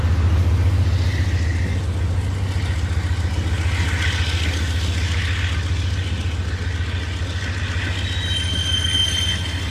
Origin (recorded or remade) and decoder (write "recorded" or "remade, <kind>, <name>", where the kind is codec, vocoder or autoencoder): recorded